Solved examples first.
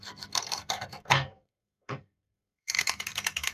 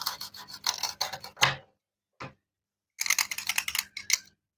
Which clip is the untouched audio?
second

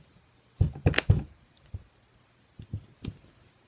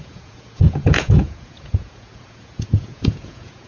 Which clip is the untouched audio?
first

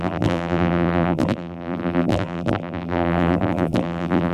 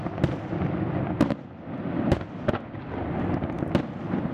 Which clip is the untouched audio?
second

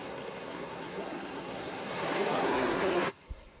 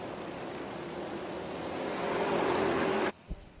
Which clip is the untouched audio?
second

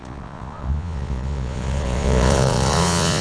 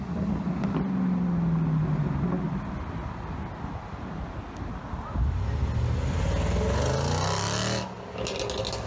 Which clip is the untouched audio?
second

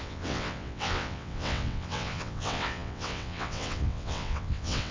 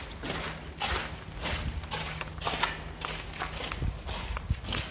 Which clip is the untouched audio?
second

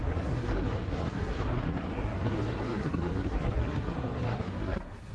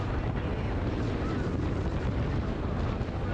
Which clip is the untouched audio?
second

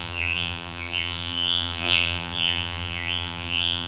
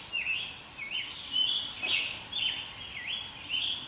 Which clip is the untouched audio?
second